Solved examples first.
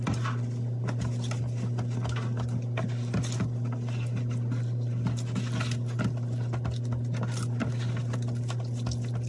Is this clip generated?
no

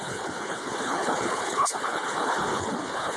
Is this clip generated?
yes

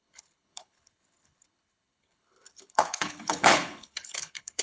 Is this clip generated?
yes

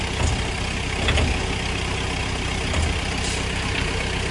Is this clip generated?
no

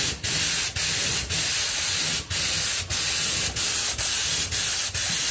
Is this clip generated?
no